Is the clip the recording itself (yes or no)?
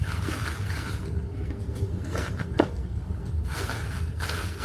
no